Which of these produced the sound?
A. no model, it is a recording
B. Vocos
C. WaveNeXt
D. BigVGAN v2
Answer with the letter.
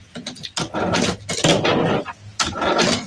A